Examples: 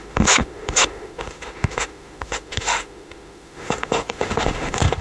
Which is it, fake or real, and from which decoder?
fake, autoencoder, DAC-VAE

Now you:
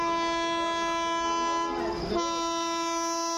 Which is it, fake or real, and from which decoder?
real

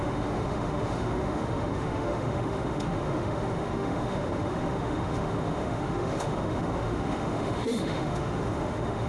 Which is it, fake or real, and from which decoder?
fake, autoencoder, DAC-VAE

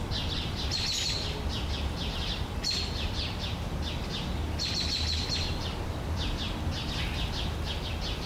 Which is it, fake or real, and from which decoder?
real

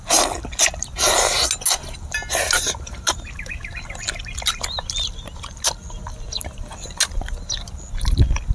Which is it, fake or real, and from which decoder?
real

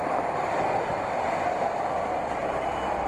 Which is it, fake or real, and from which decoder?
real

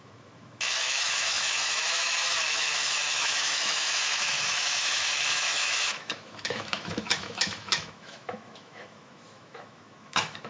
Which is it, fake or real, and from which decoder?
fake, autoencoder, DAC-VAE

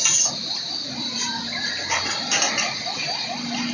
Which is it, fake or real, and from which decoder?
real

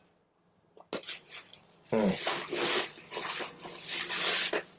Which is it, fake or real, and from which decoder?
real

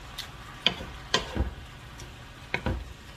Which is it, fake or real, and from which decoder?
real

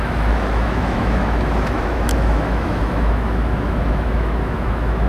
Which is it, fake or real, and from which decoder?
fake, autoencoder, DAC-VAE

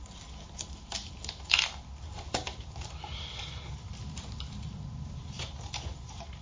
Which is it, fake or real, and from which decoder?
real